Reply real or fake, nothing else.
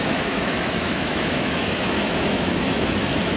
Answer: fake